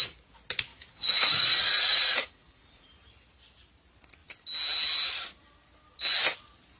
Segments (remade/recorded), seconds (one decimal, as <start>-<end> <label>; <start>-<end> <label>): 0.0-0.7 recorded; 0.7-3.1 remade; 3.1-6.8 recorded